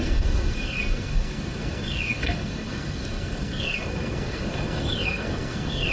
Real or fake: fake